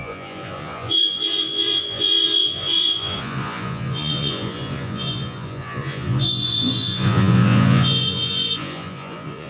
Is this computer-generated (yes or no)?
yes